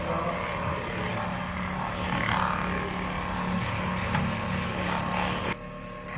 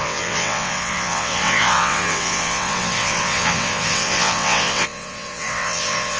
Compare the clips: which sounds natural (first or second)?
first